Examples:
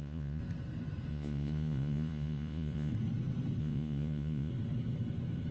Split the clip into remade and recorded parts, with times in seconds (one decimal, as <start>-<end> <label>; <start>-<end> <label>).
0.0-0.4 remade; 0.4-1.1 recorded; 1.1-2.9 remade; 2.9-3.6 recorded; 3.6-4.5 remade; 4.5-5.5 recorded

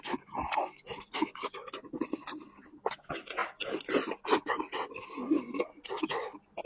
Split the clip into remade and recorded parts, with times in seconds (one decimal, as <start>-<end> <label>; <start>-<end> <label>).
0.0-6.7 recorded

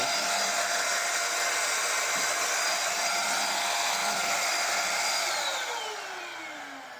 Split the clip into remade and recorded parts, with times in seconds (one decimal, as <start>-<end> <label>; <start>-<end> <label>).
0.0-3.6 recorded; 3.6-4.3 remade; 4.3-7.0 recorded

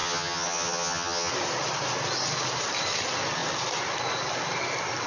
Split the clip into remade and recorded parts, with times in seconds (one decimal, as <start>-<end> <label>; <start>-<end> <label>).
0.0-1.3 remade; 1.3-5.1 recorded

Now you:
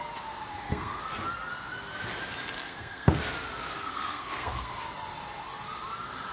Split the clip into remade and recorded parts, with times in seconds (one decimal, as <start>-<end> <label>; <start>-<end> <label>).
0.0-0.5 recorded; 0.5-1.0 remade; 1.0-2.6 recorded; 2.6-3.2 remade; 3.2-3.8 recorded; 3.8-4.7 remade; 4.7-6.3 recorded

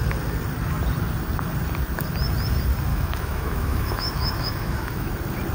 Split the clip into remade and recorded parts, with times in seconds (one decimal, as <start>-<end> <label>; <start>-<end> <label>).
0.0-2.9 recorded; 2.9-5.1 remade; 5.1-5.5 recorded

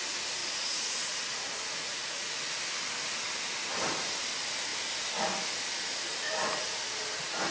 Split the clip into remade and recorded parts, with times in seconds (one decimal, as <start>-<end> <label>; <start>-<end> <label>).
0.0-0.4 recorded; 0.4-2.3 remade; 2.3-7.5 recorded